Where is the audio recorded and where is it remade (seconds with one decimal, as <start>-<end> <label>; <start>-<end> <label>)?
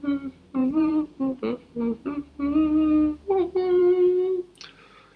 0.0-0.6 recorded; 0.6-1.4 remade; 1.4-5.2 recorded